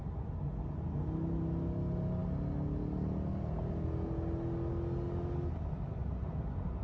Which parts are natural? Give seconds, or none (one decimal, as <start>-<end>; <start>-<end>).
0.0-6.8